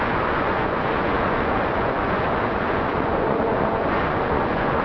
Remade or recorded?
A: remade